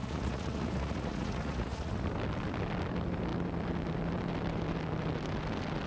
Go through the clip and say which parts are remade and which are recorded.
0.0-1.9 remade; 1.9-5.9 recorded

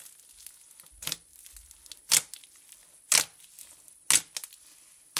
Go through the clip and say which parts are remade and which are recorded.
0.0-5.2 recorded

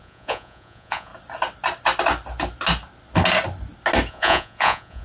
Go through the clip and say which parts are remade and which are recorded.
0.0-1.1 remade; 1.1-4.1 recorded; 4.1-5.0 remade

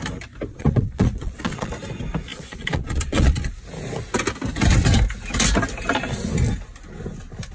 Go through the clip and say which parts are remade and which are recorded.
0.0-0.5 recorded; 0.5-1.7 remade; 1.7-2.3 recorded; 2.3-3.5 remade; 3.5-7.5 recorded

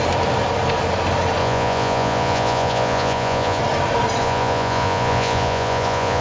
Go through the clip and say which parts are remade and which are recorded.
0.0-1.4 recorded; 1.4-3.6 remade; 3.6-4.2 recorded; 4.2-6.2 remade

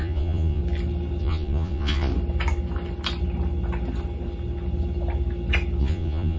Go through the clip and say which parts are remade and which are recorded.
0.0-0.6 remade; 0.6-1.2 recorded; 1.2-2.1 remade; 2.1-5.8 recorded; 5.8-6.4 remade

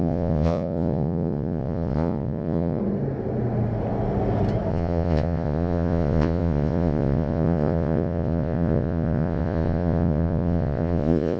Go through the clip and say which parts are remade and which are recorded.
0.0-2.8 remade; 2.8-4.7 recorded; 4.7-11.4 remade